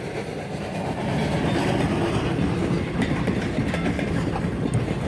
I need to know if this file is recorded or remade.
recorded